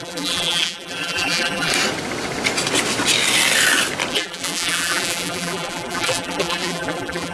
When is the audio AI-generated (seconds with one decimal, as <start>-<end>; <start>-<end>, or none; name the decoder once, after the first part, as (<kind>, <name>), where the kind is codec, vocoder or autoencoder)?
0.0-1.7 (vocoder, BigVGAN v2); 4.1-7.3